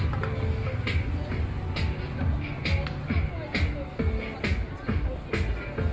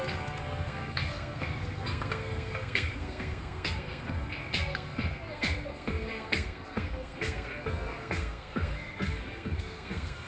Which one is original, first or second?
first